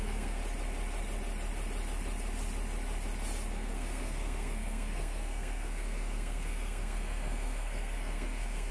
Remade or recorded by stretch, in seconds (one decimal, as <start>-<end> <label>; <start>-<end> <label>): 0.0-0.4 remade; 0.4-3.5 recorded; 3.5-8.7 remade